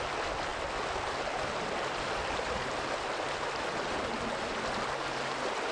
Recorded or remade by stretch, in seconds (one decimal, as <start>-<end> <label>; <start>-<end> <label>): 0.0-5.7 recorded